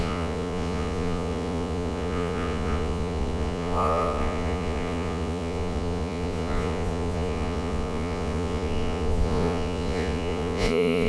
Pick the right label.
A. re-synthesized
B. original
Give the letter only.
A